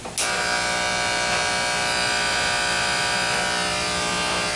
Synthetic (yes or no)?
no